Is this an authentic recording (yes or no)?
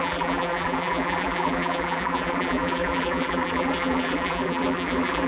no